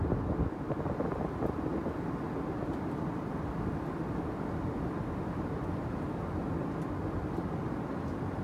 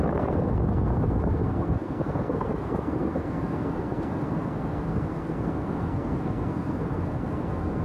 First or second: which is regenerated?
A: second